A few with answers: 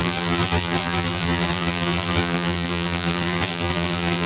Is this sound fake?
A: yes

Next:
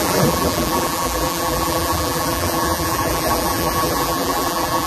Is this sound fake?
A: yes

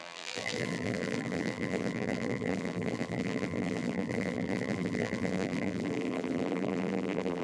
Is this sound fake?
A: yes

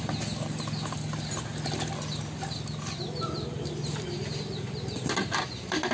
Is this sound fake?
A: no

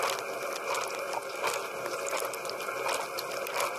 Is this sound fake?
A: no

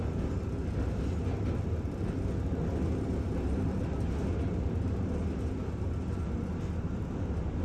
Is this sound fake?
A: no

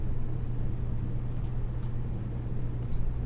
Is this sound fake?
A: no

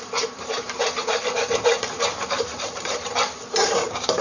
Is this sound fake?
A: yes